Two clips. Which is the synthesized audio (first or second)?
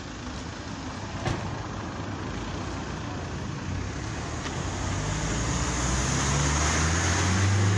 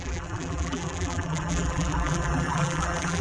second